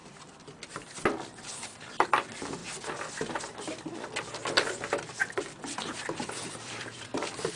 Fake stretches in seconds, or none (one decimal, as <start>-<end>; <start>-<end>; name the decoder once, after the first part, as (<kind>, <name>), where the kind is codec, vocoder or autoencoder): 0.0-2.6 (vocoder, BigVGAN v2); 5.6-7.6